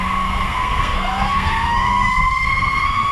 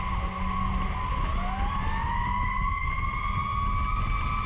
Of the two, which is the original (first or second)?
second